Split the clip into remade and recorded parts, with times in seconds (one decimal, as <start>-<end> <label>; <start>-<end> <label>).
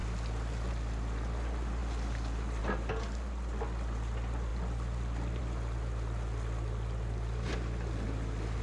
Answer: 0.0-8.6 recorded